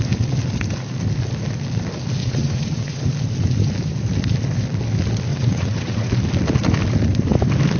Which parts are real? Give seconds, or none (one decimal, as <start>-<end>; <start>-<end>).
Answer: 0.0-2.2; 3.0-5.3; 6.1-7.8